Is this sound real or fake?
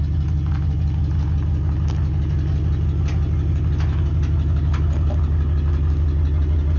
real